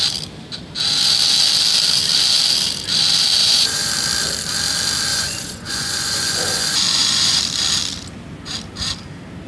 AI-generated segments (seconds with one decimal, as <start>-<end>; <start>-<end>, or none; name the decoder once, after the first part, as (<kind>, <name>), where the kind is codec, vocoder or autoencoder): 3.4-3.9 (vocoder, Vocos); 5.1-7.4